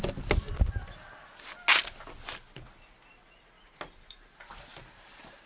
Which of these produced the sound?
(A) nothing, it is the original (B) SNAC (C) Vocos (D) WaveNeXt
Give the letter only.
A